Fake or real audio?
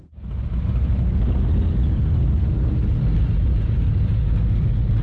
real